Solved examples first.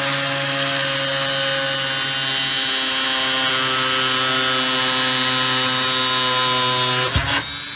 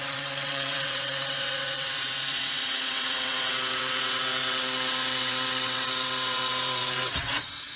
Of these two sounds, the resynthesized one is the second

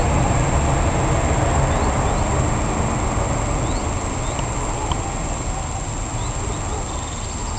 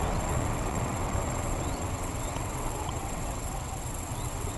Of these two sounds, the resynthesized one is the second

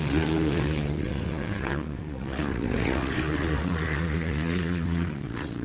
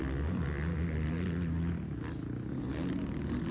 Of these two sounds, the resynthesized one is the first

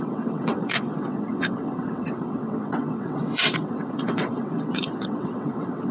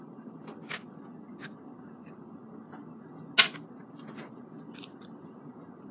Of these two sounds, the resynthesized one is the first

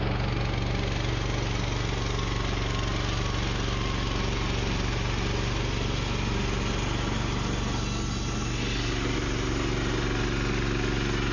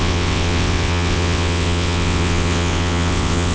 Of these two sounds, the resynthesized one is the second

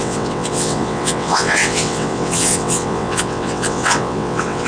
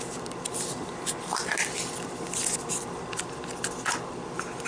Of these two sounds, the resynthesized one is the first